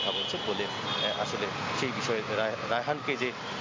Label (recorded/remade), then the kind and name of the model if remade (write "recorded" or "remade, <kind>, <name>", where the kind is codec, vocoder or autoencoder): recorded